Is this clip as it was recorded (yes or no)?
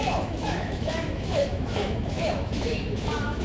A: no